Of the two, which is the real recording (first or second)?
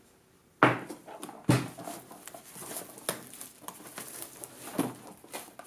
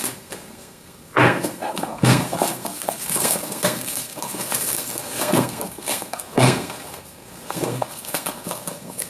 first